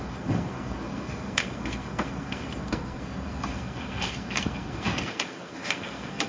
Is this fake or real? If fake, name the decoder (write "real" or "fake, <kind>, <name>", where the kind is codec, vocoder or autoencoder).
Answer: fake, codec, SNAC